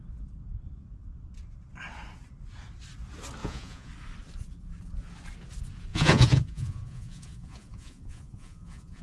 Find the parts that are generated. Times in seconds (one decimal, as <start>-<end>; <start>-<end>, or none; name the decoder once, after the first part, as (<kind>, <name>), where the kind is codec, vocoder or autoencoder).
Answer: 3.4-3.9 (vocoder, Vocos); 5.9-9.0